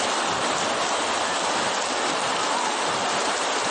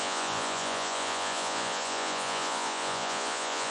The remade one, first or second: second